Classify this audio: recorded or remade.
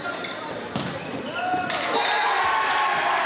recorded